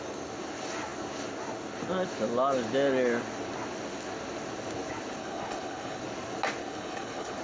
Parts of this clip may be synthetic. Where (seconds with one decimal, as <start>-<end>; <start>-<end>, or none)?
5.2-6.0; 6.6-7.4